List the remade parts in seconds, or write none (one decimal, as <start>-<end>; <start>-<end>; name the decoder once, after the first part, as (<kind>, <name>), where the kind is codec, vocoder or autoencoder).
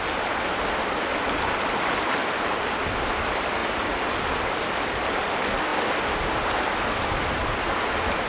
none